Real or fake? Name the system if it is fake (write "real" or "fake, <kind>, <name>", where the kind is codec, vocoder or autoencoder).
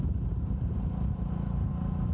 real